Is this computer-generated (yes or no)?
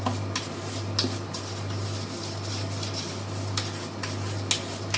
no